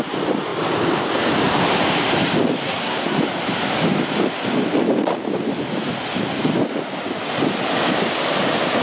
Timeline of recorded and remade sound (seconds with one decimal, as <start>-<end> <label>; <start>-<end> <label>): 0.0-2.6 recorded; 2.6-3.2 remade; 3.2-8.8 recorded

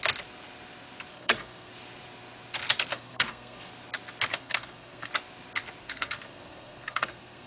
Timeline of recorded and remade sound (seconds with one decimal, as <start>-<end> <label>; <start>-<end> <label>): 0.0-1.1 recorded; 1.1-1.7 remade; 1.7-2.9 recorded; 2.9-3.7 remade; 3.7-4.3 recorded; 4.3-5.1 remade; 5.1-5.8 recorded; 5.8-7.5 remade

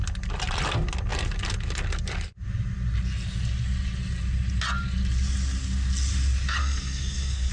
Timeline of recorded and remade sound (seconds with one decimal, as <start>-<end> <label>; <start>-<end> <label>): 0.0-6.6 recorded; 6.6-7.5 remade

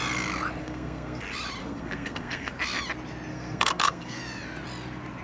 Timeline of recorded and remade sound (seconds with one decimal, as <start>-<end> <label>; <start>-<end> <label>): 0.0-0.6 recorded; 0.6-1.2 remade; 1.2-1.6 recorded; 1.6-2.5 remade; 2.5-3.3 recorded; 3.3-4.2 remade; 4.2-5.2 recorded

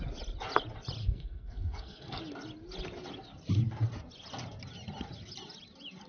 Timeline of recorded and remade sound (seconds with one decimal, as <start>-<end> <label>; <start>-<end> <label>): 0.0-1.0 recorded; 1.0-2.2 remade; 2.2-6.1 recorded